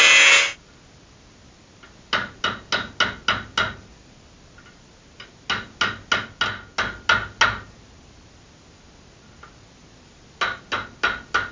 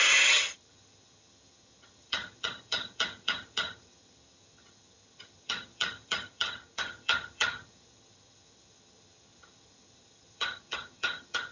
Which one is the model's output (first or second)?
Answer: second